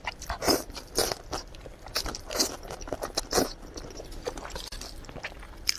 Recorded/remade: remade